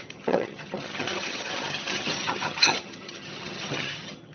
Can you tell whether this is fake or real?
fake